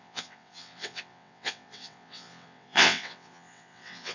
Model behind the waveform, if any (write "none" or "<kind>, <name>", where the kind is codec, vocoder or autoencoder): vocoder, WaveNeXt